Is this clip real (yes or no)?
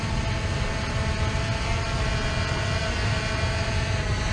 yes